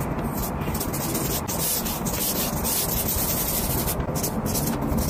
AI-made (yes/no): no